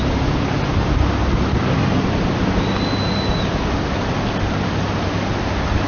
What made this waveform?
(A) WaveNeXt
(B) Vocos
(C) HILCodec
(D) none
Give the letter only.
D